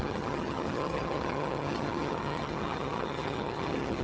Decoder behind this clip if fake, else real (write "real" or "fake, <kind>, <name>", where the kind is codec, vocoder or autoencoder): fake, vocoder, HiFi-GAN